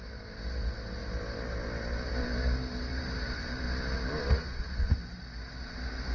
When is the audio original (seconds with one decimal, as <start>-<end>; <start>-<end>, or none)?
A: 0.0-2.9; 3.5-6.1